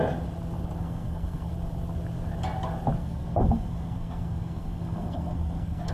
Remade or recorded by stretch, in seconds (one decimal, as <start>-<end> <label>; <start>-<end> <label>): 0.0-0.8 recorded; 0.8-1.5 remade; 1.5-3.0 recorded; 3.0-5.9 remade